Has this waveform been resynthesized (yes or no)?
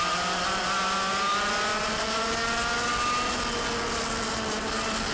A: no